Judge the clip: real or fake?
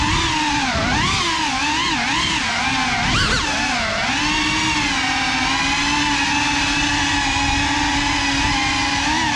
real